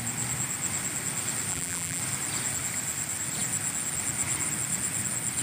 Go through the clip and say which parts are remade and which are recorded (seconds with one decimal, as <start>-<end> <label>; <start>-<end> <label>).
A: 0.0-1.5 recorded; 1.5-2.0 remade; 2.0-5.4 recorded